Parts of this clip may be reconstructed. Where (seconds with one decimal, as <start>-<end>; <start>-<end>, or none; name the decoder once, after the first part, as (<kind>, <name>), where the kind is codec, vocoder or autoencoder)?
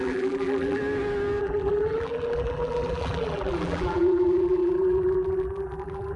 0.0-0.8 (vocoder, BigVGAN v2); 1.4-6.2